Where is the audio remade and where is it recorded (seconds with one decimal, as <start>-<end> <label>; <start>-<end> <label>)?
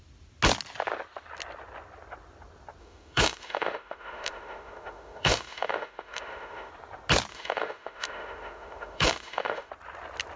0.0-2.8 recorded; 2.8-6.7 remade; 6.7-7.3 recorded; 7.3-9.7 remade; 9.7-10.4 recorded